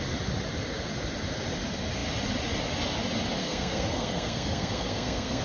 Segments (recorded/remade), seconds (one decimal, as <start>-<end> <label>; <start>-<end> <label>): 0.0-3.4 recorded; 3.4-5.4 remade